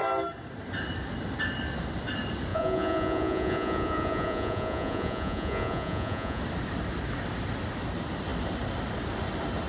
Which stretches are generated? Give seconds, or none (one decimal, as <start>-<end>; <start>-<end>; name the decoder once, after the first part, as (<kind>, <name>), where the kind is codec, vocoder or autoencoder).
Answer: 2.5-6.4 (vocoder, Vocos)